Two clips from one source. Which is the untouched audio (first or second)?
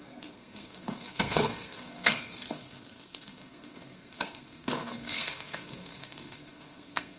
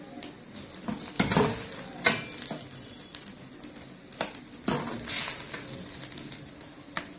second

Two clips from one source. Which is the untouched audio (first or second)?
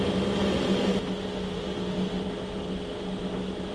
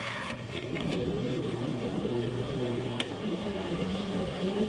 first